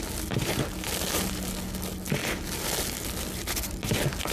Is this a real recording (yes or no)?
yes